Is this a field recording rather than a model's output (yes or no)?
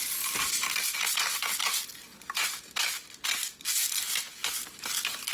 yes